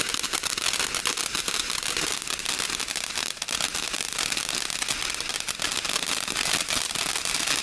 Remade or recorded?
recorded